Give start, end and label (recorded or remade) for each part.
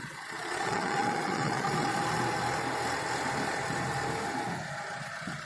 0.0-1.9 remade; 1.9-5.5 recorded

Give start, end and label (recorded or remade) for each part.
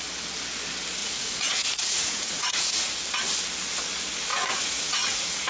0.0-1.0 recorded; 1.0-3.0 remade; 3.0-4.3 recorded; 4.3-5.5 remade